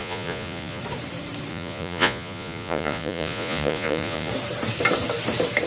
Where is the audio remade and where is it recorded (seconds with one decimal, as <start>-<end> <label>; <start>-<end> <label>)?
0.0-0.8 remade; 0.8-1.5 recorded; 1.5-4.3 remade; 4.3-5.7 recorded